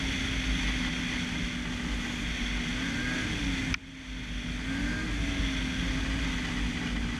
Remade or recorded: recorded